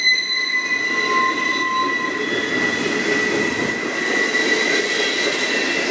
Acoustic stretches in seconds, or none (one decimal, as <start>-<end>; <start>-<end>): 0.0-5.9